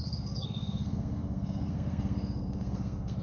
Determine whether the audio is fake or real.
fake